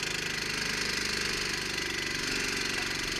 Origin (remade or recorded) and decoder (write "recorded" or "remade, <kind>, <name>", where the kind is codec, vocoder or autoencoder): recorded